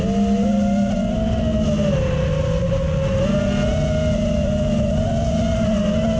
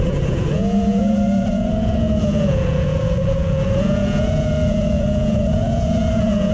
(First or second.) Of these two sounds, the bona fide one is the first